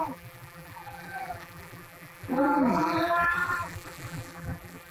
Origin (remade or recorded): remade